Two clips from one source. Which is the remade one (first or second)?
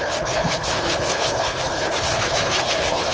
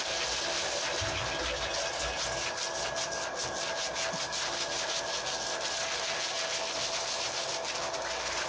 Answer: first